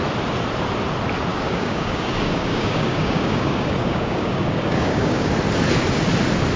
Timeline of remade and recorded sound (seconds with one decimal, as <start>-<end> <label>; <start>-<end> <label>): 0.0-1.3 recorded; 1.3-5.3 remade; 5.3-6.6 recorded